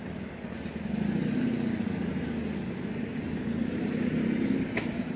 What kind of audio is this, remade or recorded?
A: recorded